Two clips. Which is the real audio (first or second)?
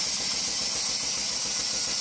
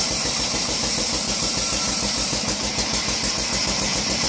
first